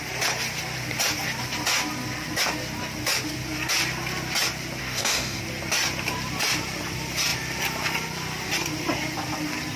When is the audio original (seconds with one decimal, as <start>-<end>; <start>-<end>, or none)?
0.0-4.8; 5.4-9.8

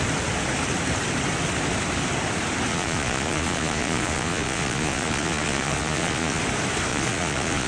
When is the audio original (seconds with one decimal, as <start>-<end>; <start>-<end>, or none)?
0.0-2.7; 6.4-6.9